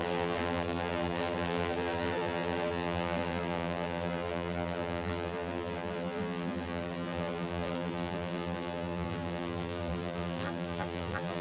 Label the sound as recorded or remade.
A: remade